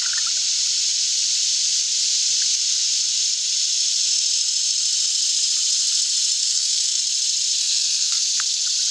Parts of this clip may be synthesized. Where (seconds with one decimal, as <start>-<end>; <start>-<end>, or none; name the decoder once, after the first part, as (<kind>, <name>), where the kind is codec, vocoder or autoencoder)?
6.4-7.0 (codec, SNAC); 7.6-8.2